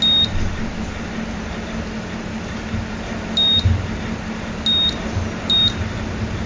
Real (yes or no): yes